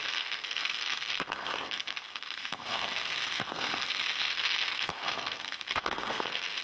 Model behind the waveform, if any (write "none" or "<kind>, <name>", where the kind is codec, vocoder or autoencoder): codec, SNAC